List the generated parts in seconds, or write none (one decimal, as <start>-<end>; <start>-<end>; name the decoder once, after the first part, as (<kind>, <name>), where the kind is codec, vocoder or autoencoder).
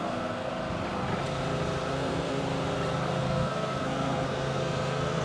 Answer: 0.0-0.5 (codec, SNAC); 1.9-2.4; 3.2-5.2